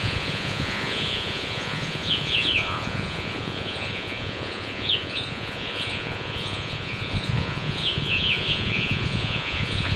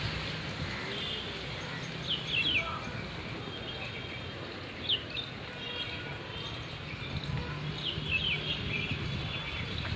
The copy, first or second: first